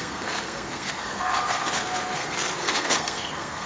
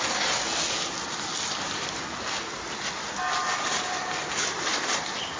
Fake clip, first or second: first